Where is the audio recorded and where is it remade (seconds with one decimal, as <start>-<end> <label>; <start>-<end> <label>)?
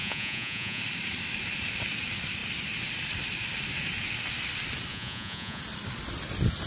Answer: 0.0-0.8 remade; 0.8-4.9 recorded; 4.9-5.6 remade; 5.6-6.7 recorded